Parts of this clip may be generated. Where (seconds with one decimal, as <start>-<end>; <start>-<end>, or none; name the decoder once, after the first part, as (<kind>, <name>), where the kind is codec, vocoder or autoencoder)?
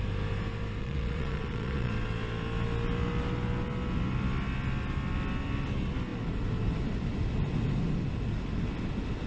0.8-1.9 (vocoder, Vocos)